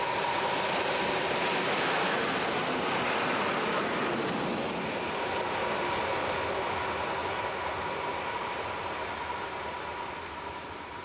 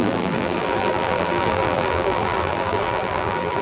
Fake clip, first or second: second